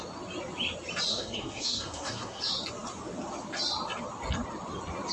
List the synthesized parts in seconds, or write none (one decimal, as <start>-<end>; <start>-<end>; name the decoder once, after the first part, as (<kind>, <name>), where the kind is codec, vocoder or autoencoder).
1.1-2.4 (codec, SNAC)